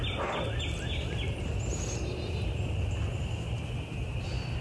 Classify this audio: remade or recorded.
recorded